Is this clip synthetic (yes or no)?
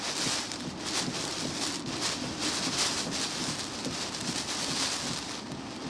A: no